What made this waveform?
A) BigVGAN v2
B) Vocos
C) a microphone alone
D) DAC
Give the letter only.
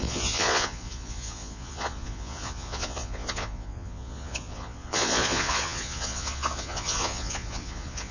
B